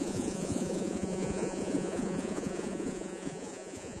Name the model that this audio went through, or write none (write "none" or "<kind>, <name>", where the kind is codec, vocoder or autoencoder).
vocoder, Vocos